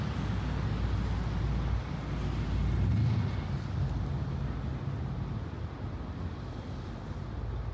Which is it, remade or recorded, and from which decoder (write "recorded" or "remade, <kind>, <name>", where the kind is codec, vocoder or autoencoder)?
recorded